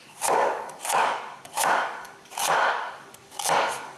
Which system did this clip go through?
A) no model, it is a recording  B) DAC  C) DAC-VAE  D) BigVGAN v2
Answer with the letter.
B